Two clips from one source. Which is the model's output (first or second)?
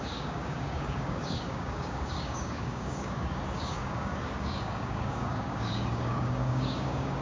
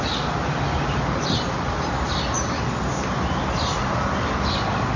first